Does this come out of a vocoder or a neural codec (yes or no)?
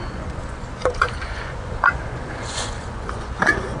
yes